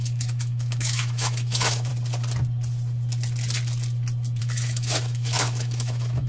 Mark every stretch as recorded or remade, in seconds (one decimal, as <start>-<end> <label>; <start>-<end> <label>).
0.0-1.9 remade; 1.9-4.4 recorded; 4.4-6.3 remade

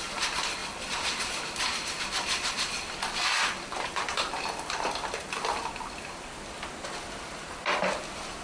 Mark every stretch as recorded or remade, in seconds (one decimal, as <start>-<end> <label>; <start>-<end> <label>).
0.0-8.4 recorded

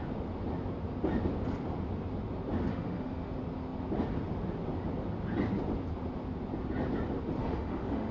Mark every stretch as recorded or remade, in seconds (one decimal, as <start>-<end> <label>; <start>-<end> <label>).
0.0-2.7 recorded; 2.7-3.3 remade; 3.3-7.4 recorded; 7.4-8.1 remade

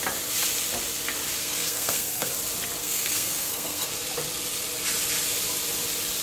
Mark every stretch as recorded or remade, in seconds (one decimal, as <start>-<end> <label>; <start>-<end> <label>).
0.0-1.4 recorded; 1.4-2.3 remade; 2.3-2.8 recorded; 2.8-3.9 remade; 3.9-6.2 recorded

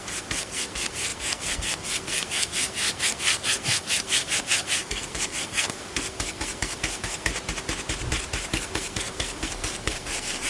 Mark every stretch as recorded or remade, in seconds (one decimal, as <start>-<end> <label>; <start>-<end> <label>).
0.0-7.3 remade; 7.3-8.5 recorded; 8.5-10.5 remade

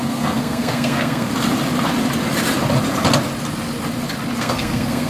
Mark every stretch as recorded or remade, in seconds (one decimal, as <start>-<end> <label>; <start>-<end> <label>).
0.0-1.3 remade; 1.3-4.4 recorded; 4.4-5.1 remade